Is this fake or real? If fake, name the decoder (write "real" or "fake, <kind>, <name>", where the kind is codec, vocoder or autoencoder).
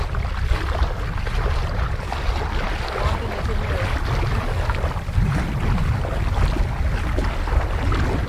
real